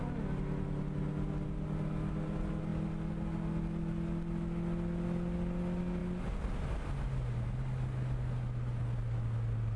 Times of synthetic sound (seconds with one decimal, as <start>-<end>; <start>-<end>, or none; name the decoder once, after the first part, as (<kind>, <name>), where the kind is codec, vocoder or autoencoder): none